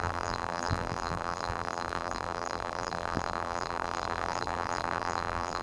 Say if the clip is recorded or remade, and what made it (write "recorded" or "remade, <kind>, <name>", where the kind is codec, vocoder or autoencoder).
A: remade, vocoder, BigVGAN v2